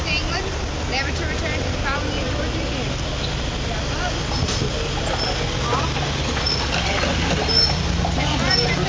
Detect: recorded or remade recorded